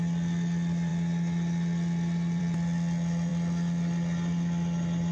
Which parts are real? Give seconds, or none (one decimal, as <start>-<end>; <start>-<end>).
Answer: 0.0-5.1